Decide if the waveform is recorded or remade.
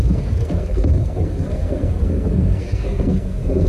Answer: remade